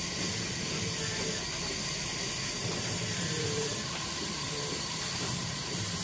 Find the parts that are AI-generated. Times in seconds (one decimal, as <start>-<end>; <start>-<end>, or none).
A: 0.0-0.7; 2.6-6.0